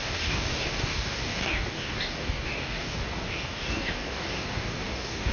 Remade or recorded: remade